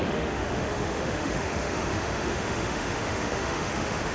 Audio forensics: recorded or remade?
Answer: remade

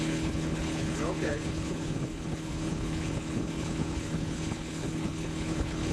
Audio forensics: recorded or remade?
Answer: remade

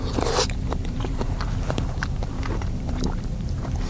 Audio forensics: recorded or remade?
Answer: remade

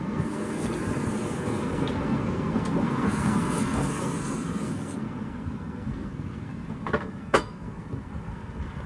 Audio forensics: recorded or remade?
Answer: remade